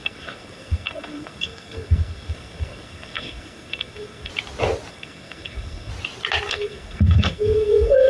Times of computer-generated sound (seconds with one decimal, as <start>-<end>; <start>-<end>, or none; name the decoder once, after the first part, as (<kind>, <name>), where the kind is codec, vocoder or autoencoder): 0.0-4.3 (codec, SNAC); 4.9-5.9; 6.5-8.1